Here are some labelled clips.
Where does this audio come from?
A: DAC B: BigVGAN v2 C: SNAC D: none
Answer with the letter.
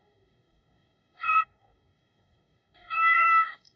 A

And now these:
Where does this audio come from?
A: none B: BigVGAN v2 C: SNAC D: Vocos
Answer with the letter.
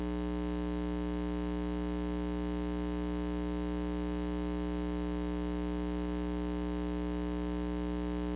A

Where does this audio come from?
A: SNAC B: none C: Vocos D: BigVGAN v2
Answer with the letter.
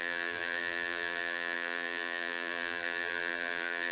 D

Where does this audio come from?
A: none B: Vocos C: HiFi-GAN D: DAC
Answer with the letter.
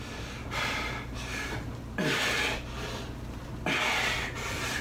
A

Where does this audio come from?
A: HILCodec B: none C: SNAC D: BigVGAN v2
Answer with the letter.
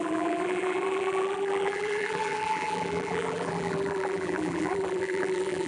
D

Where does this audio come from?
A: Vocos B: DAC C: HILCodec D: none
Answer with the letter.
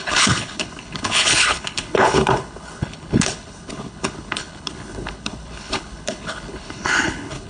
C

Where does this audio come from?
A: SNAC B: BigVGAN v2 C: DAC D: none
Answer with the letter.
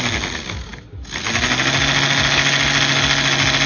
D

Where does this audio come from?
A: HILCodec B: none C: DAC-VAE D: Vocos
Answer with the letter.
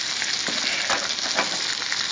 B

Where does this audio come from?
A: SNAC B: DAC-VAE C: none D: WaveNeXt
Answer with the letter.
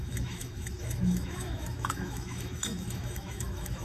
B